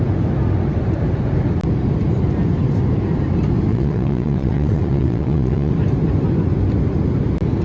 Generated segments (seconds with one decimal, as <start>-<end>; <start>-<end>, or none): 3.7-5.7